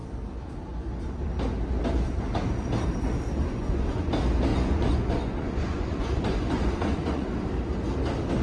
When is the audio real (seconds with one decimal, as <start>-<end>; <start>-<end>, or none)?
0.0-3.4; 4.1-4.5; 7.3-8.4

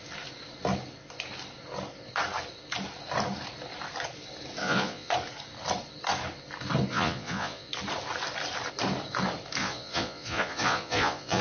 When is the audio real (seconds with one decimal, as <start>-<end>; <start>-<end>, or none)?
0.0-4.6; 5.1-6.9; 7.7-9.6